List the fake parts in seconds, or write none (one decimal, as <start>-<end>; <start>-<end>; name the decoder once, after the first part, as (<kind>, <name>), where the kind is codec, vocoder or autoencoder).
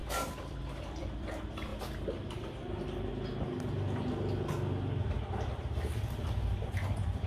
0.0-1.7 (vocoder, BigVGAN v2); 2.3-3.1; 5.5-7.3